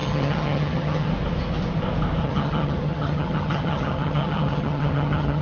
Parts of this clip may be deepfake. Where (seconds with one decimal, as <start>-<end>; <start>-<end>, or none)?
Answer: 0.0-1.1; 2.2-5.4